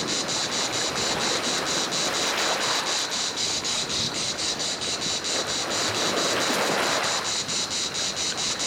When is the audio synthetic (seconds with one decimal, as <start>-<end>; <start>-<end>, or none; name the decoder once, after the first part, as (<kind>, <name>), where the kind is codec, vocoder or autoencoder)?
3.3-4.9 (codec, DAC)